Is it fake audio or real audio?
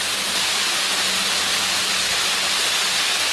real